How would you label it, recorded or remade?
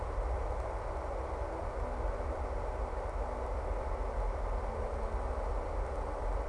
recorded